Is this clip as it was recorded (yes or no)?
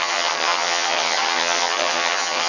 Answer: no